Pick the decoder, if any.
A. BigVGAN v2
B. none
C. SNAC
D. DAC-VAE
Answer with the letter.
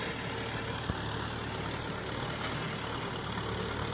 B